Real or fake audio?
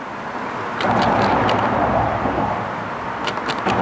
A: real